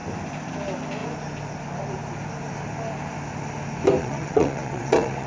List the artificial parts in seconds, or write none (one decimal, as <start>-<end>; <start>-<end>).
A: 4.0-5.3